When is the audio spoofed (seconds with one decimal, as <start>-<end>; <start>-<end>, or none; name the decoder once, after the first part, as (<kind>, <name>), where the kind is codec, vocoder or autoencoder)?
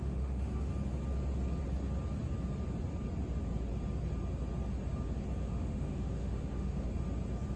0.0-0.7 (autoencoder, DAC-VAE); 5.4-6.9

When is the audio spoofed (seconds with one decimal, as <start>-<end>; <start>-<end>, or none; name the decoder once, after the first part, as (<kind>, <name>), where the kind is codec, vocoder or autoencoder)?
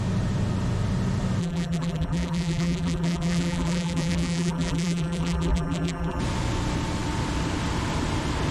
1.4-6.2 (vocoder, BigVGAN v2)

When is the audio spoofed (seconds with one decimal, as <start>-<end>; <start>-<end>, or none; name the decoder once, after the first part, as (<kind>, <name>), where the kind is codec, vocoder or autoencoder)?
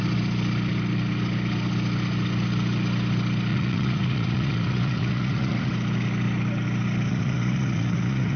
3.5-5.7 (vocoder, Vocos); 7.1-8.4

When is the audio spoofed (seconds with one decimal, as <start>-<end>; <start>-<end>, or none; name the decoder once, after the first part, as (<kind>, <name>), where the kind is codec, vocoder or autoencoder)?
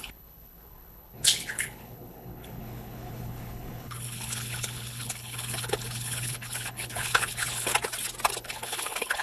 0.0-7.7 (codec, HILCodec); 8.4-9.2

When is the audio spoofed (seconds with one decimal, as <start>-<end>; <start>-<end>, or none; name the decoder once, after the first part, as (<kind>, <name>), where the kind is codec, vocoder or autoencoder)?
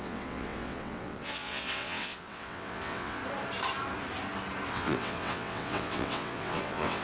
0.0-3.2 (vocoder, WaveNeXt); 4.7-7.0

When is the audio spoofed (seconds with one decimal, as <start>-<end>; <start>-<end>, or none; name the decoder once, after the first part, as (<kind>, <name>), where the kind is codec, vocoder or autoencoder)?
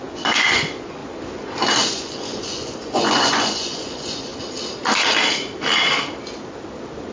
0.0-1.0 (vocoder, Vocos); 1.9-4.3